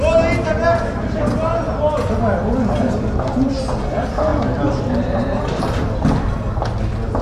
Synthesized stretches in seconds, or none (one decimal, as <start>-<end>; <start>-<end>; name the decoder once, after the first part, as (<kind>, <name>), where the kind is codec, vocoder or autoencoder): none